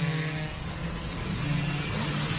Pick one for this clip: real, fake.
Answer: real